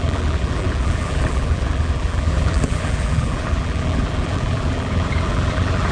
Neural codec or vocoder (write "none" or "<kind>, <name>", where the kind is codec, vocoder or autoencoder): vocoder, BigVGAN v2